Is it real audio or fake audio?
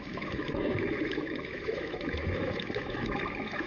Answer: fake